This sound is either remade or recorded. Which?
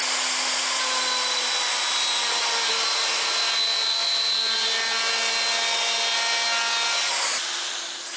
recorded